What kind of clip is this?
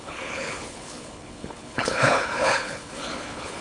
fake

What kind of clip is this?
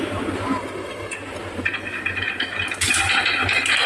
fake